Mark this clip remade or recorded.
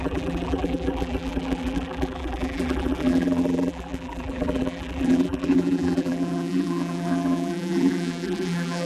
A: remade